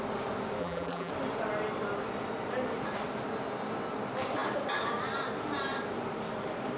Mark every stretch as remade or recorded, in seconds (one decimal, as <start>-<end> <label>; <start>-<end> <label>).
0.0-0.6 recorded; 0.6-1.1 remade; 1.1-6.8 recorded